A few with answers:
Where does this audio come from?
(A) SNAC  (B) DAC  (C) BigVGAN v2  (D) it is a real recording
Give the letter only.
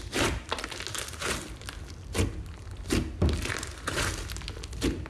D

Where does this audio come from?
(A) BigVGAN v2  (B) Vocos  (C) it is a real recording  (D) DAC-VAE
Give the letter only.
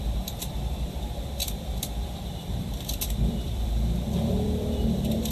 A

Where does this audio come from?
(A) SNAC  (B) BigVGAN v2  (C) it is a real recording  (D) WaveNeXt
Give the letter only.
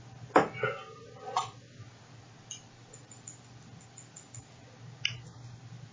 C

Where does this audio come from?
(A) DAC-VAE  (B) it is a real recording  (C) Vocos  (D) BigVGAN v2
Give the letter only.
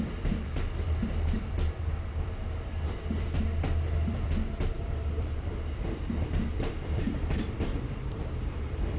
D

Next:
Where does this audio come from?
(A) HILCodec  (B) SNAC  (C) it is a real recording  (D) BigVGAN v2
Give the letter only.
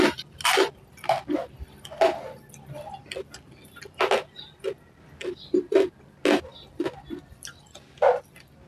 C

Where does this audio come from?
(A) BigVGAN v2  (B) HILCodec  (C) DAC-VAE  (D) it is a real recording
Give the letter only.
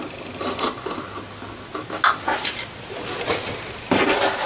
D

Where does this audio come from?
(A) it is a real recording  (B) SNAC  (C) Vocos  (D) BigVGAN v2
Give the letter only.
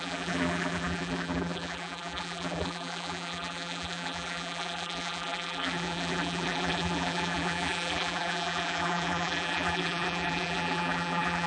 D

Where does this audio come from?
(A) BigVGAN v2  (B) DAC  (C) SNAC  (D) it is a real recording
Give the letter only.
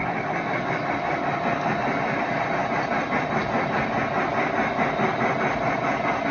D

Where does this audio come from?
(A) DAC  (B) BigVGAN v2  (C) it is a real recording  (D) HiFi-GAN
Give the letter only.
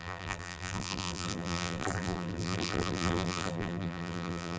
B